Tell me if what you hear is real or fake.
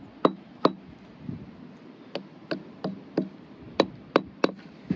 real